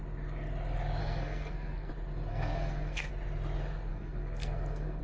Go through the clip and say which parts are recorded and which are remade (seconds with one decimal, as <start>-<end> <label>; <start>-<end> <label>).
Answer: 0.0-1.0 recorded; 1.0-1.9 remade; 1.9-2.3 recorded; 2.3-3.1 remade; 3.1-3.9 recorded; 3.9-5.0 remade